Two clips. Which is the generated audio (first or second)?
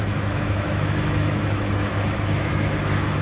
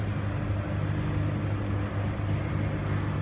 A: first